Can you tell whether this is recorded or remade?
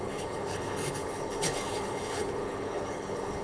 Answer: remade